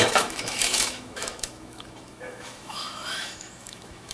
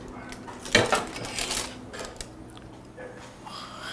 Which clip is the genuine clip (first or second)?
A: second